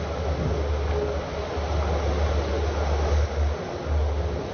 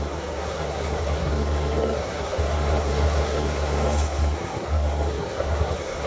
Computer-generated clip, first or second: second